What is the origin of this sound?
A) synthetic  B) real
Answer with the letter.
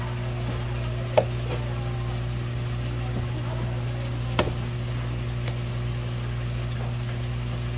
B